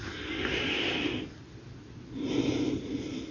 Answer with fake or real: real